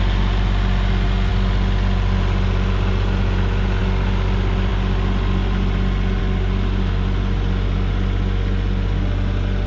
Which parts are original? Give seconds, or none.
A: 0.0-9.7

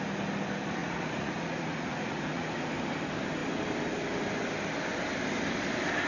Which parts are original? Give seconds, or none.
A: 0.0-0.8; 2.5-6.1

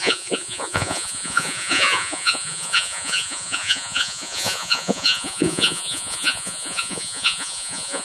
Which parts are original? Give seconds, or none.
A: none

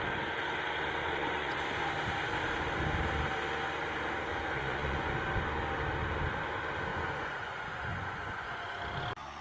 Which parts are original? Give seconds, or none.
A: 0.0-1.0; 1.8-4.3; 5.1-6.9; 8.8-9.4

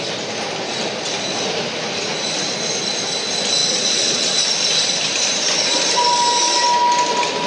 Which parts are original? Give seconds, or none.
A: 0.0-3.6; 4.4-7.5

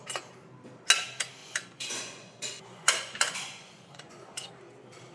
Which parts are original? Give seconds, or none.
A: 0.0-1.4; 4.5-5.1

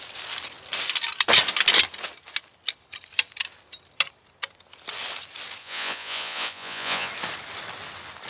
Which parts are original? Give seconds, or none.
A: 0.0-5.6; 7.1-8.3

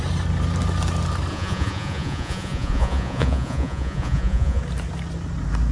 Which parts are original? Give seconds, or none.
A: 0.0-1.3; 4.6-5.7